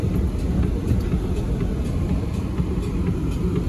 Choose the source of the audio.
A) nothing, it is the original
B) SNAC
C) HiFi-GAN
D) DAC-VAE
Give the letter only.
A